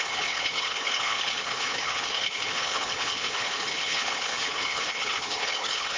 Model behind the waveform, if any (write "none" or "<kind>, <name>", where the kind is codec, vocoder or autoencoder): codec, HILCodec